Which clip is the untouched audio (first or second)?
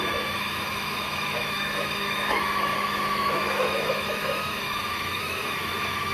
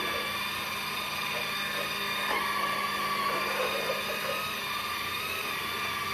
second